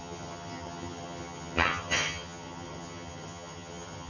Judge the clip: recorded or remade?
remade